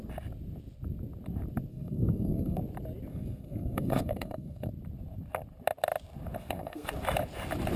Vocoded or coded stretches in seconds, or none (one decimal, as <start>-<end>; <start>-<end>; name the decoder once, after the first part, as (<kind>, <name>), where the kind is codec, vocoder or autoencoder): 1.7-2.6 (codec, SNAC); 3.1-4.7; 6.4-6.9